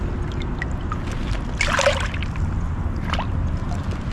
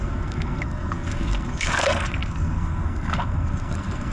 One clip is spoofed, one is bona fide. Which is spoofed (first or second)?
second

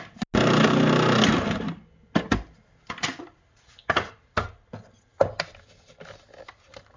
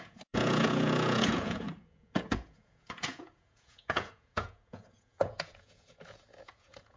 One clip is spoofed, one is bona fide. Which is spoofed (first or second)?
second